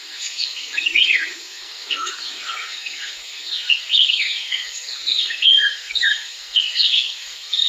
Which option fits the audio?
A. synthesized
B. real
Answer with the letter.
A